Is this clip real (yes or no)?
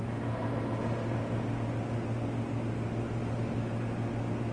yes